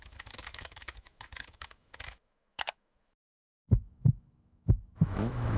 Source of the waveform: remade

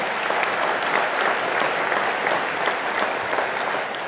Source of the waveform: recorded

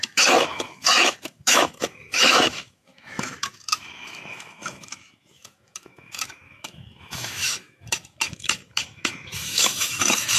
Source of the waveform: remade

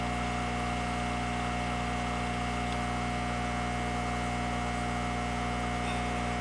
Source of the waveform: recorded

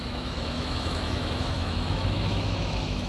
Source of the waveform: remade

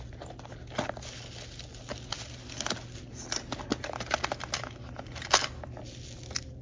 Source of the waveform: recorded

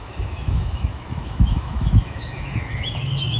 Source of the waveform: remade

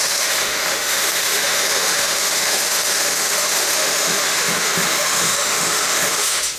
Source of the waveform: remade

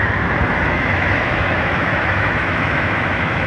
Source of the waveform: remade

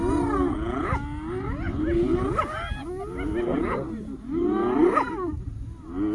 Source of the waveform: recorded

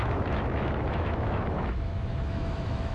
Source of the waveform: remade